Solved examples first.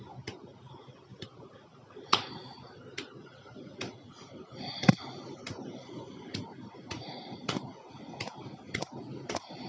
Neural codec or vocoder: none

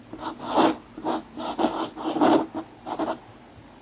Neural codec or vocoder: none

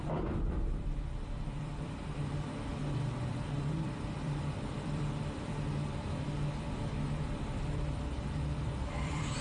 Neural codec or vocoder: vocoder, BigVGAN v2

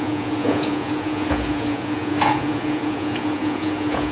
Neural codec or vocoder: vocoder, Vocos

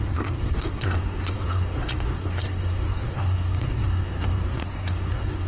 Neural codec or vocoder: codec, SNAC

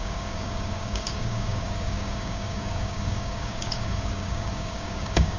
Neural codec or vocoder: codec, DAC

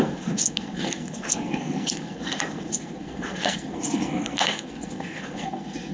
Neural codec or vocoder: codec, SNAC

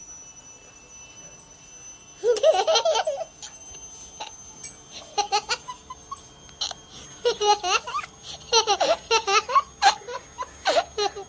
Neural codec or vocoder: none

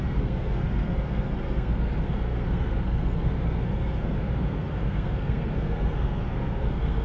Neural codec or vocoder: codec, SNAC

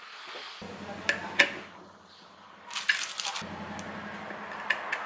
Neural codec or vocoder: none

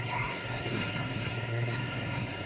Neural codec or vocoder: codec, SNAC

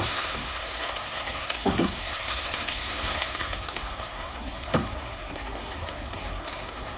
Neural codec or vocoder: codec, SNAC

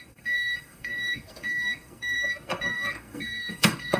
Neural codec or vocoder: codec, SNAC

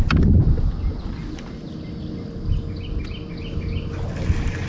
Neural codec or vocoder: none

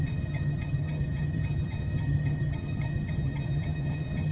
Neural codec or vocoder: vocoder, HiFi-GAN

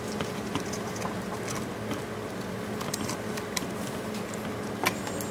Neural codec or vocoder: none